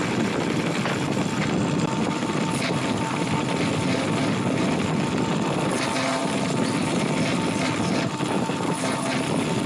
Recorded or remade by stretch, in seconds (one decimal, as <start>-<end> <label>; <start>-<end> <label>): 0.0-9.7 recorded